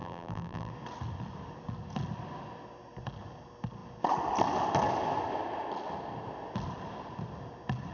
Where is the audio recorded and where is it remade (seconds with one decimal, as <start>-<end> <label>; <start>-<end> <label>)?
0.0-0.7 remade; 0.7-7.9 recorded